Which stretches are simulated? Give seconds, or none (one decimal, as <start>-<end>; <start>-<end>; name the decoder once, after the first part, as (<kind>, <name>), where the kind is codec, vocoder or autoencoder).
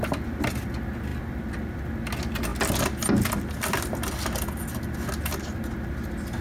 none